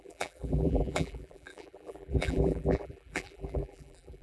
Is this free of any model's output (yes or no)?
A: no